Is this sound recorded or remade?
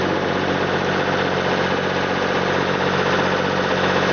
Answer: recorded